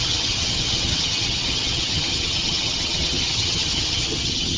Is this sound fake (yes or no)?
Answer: yes